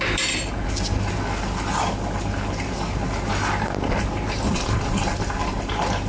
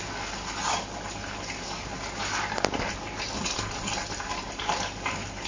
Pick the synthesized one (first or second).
first